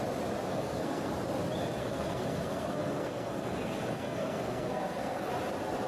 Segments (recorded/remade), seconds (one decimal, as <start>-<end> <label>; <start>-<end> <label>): 0.0-0.5 recorded; 0.5-1.1 remade; 1.1-1.8 recorded; 1.8-5.3 remade; 5.3-5.9 recorded